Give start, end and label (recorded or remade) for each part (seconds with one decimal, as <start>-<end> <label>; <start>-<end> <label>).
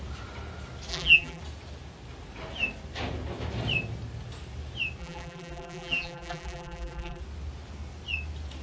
0.0-0.9 recorded; 0.9-1.4 remade; 1.4-5.0 recorded; 5.0-7.2 remade; 7.2-8.6 recorded